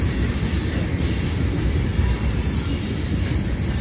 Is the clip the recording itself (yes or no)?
yes